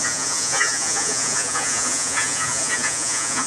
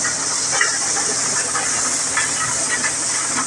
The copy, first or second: first